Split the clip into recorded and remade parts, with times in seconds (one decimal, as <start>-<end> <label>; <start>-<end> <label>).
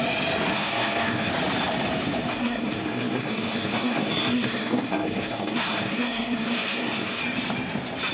0.0-0.5 recorded; 0.5-1.3 remade; 1.3-2.3 recorded; 2.3-7.2 remade; 7.2-8.1 recorded